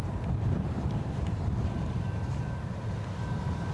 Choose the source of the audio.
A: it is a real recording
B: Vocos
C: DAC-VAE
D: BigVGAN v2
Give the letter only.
D